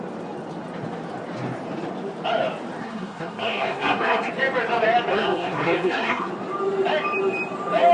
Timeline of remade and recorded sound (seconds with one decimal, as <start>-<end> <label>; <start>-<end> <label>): 0.0-2.8 recorded; 2.8-4.3 remade; 4.3-5.1 recorded; 5.1-6.3 remade; 6.3-7.9 recorded